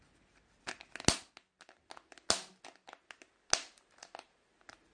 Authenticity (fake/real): real